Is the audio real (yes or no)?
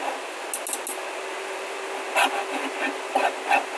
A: yes